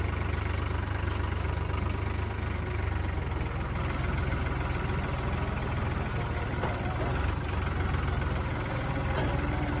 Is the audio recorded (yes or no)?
yes